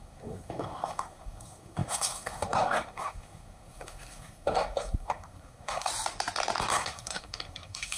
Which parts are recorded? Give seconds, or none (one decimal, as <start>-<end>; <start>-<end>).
5.9-6.7